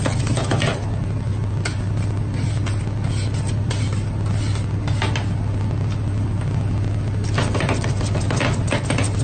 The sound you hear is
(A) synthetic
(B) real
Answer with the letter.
B